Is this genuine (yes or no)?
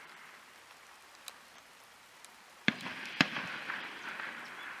no